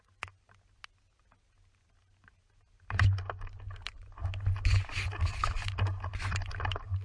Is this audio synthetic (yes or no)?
no